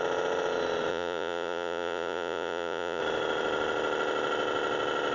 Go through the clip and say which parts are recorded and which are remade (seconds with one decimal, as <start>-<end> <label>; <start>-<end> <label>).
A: 0.0-0.9 recorded; 0.9-3.0 remade; 3.0-5.1 recorded